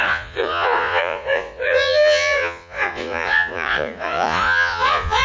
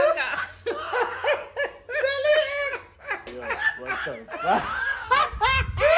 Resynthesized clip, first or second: first